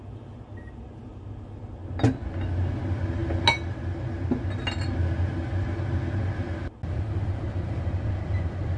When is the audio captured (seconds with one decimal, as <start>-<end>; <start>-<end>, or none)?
0.0-8.8